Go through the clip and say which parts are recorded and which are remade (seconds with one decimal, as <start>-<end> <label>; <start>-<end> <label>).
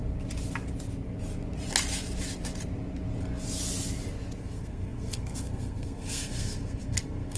0.0-4.4 recorded; 4.4-7.4 remade